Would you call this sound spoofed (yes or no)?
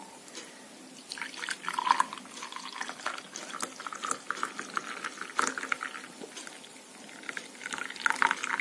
no